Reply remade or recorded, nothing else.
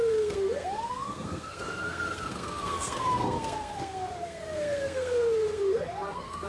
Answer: remade